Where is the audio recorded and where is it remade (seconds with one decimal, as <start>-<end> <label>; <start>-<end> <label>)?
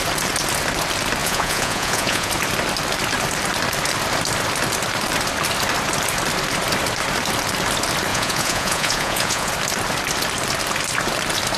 0.0-1.2 recorded; 1.2-2.3 remade; 2.3-8.1 recorded; 8.1-9.5 remade; 9.5-11.6 recorded